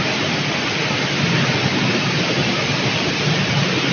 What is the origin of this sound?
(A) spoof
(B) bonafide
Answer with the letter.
B